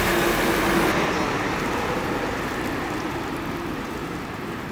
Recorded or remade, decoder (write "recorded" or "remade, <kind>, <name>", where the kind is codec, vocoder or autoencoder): recorded